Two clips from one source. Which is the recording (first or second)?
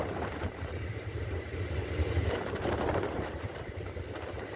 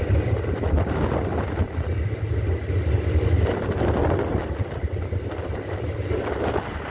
second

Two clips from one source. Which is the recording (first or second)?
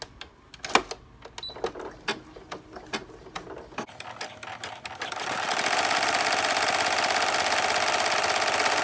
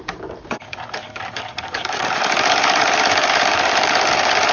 first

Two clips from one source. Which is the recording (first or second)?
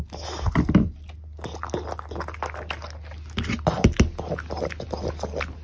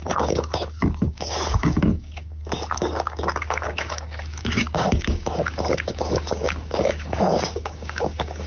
first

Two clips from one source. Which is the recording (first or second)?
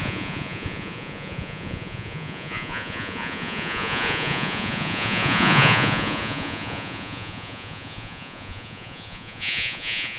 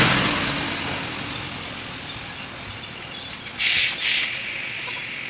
second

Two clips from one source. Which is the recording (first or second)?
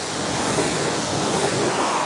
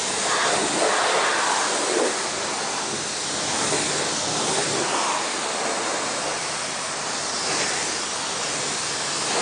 second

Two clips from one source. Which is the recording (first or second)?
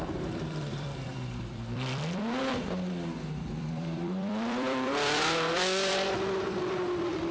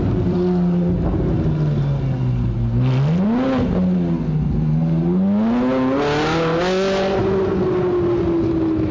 second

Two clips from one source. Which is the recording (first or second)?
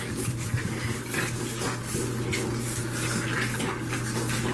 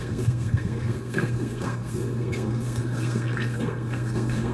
first